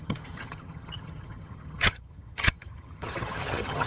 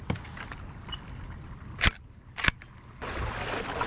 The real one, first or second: second